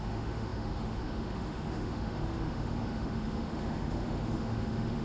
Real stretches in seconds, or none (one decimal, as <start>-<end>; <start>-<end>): none